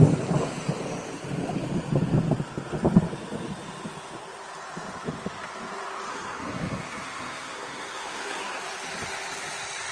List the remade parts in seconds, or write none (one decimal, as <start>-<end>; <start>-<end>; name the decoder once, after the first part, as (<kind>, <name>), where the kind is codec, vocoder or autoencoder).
6.1-8.6 (codec, SNAC)